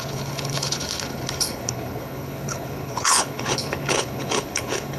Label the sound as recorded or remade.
remade